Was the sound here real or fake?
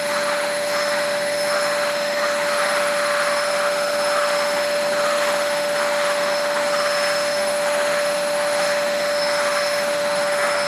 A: fake